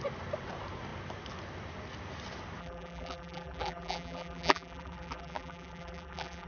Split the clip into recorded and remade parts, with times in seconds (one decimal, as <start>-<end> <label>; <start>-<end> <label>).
0.0-2.6 recorded; 2.6-6.5 remade